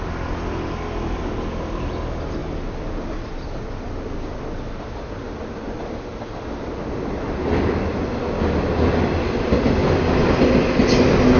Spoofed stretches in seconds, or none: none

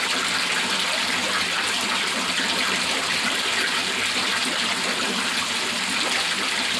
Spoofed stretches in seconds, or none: 2.6-6.8 (vocoder, BigVGAN v2)

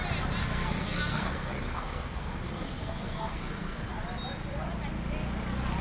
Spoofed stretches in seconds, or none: 0.4-3.9 (codec, SNAC)

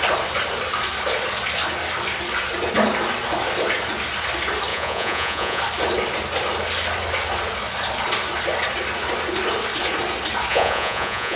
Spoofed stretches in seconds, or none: 4.7-5.6 (vocoder, Vocos); 10.5-11.4

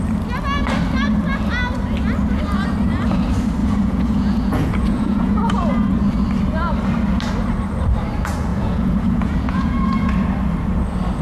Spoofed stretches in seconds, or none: 3.6-5.9 (vocoder, Vocos); 8.5-10.1

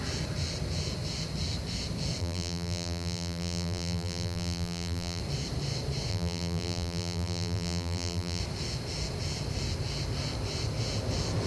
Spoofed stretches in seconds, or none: 2.2-5.2 (vocoder, BigVGAN v2); 6.1-8.4

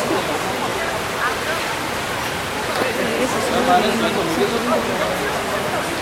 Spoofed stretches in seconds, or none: none

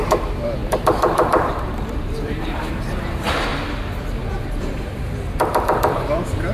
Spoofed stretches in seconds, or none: 0.0-3.5 (vocoder, BigVGAN v2); 4.3-6.5